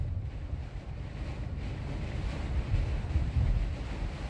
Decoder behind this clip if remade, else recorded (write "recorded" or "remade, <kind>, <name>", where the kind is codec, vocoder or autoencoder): recorded